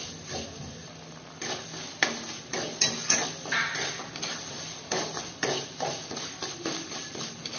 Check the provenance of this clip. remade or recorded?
remade